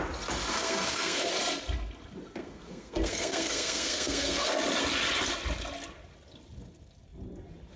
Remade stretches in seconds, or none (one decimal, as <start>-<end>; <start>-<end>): 0.5-1.3; 2.4-4.5